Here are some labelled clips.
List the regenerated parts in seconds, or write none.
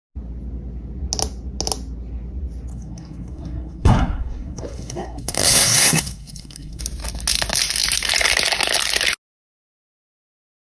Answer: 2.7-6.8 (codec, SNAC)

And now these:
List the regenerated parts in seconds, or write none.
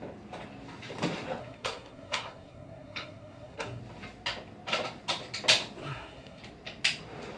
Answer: 1.4-3.8 (codec, SNAC); 5.8-6.4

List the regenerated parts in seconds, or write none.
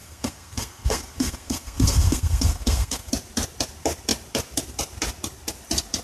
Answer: 0.0-3.1 (codec, SNAC)